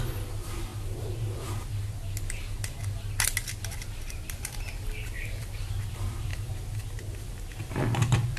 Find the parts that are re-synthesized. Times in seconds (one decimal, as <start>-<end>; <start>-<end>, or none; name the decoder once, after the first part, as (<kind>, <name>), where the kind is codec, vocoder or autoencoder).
0.0-0.7 (vocoder, BigVGAN v2); 3.7-6.3; 7.7-8.4